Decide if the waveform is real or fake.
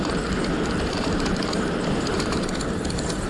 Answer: fake